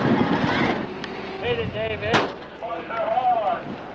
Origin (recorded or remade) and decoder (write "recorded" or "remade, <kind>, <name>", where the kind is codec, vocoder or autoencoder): recorded